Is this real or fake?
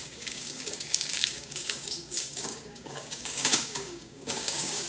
fake